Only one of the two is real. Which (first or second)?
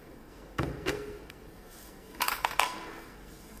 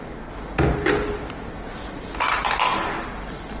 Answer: second